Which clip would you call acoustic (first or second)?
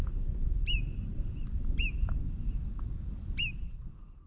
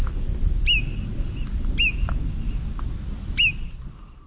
second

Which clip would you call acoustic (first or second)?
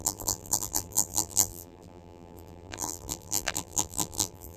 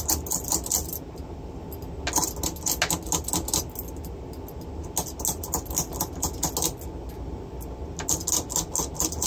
second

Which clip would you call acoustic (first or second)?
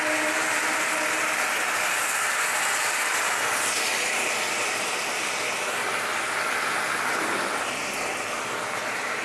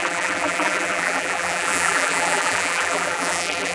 first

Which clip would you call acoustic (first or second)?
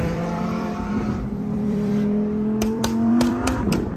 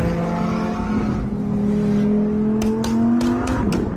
second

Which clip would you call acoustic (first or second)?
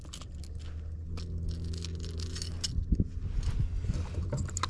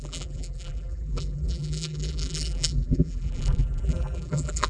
first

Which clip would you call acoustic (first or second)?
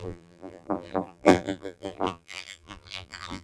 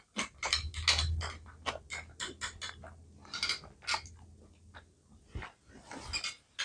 second